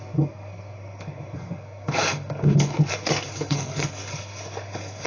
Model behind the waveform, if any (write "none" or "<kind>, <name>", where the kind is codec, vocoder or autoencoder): codec, SNAC